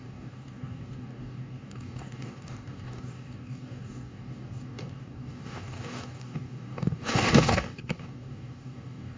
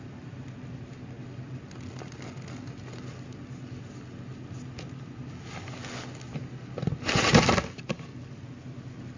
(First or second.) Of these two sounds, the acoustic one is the second